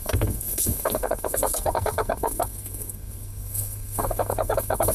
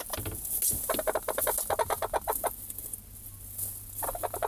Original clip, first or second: second